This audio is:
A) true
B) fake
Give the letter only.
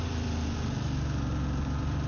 A